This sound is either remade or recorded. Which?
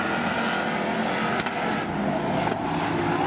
recorded